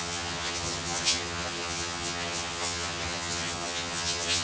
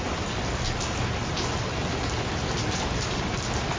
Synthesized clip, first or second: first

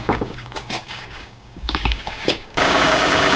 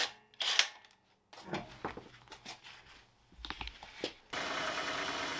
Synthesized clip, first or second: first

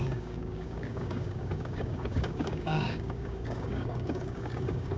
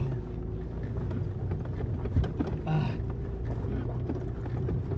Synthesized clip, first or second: first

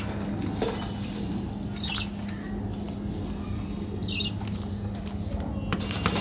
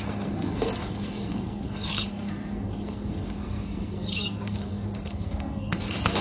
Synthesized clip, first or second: second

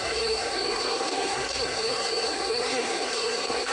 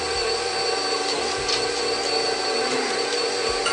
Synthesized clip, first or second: first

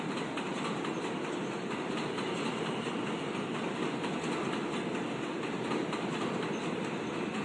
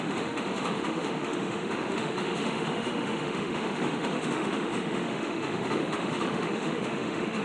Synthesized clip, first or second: second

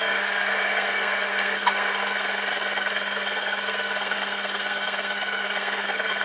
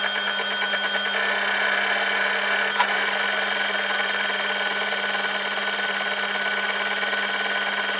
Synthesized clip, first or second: first